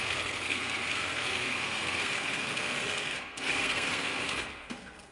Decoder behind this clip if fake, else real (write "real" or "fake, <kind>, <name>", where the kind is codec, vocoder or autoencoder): fake, codec, SNAC